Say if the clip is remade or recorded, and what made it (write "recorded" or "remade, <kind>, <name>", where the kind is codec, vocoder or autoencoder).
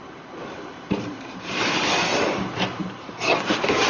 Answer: recorded